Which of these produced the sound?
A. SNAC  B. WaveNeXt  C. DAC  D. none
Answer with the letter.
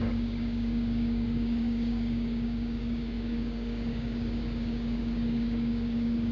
C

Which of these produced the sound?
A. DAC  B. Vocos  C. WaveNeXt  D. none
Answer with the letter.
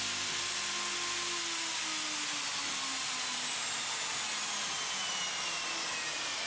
D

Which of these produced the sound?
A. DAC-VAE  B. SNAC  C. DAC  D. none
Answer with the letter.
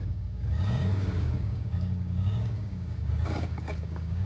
C